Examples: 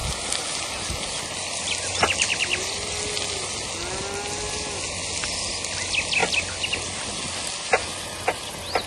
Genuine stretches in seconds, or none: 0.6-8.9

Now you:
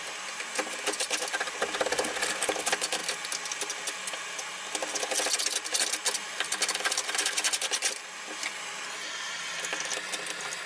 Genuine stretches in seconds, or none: 0.0-10.7

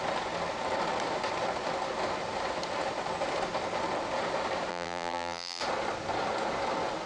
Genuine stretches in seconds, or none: 0.0-4.7; 5.6-7.1